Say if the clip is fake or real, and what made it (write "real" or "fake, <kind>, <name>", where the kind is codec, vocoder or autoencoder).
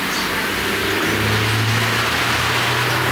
real